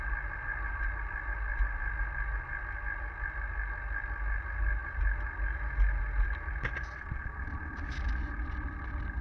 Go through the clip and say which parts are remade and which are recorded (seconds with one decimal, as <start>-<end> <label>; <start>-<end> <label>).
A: 0.0-9.2 recorded

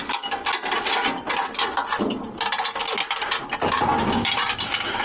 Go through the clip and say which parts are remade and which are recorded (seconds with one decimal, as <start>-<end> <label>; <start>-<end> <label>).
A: 0.0-5.0 recorded

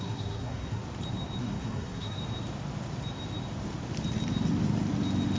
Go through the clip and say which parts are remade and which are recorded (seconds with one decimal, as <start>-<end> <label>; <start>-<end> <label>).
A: 0.0-0.8 remade; 0.8-1.4 recorded; 1.4-2.2 remade; 2.2-5.4 recorded

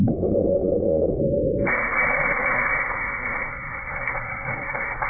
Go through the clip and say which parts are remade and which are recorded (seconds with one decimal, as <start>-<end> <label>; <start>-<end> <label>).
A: 0.0-1.2 remade; 1.2-1.7 recorded; 1.7-5.1 remade

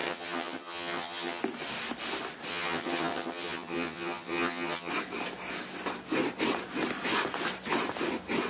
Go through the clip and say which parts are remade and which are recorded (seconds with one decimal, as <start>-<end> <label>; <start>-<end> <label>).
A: 0.0-1.4 remade; 1.4-2.5 recorded; 2.5-4.9 remade; 4.9-8.5 recorded